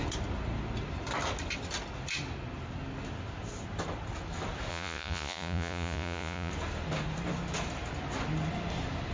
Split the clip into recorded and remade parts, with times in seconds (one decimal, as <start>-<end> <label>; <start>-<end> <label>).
0.0-4.7 recorded; 4.7-6.5 remade; 6.5-9.1 recorded